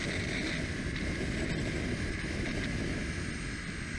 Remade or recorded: recorded